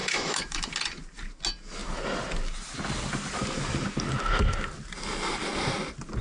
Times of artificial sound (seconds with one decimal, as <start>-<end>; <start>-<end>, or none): 0.0-0.7